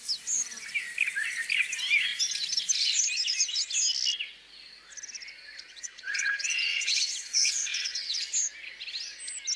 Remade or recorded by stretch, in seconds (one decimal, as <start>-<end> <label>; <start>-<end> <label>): 0.0-5.7 recorded; 5.7-8.2 remade; 8.2-9.6 recorded